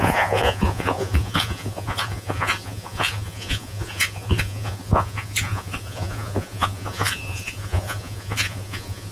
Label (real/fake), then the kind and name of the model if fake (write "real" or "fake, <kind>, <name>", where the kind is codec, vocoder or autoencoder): fake, vocoder, Vocos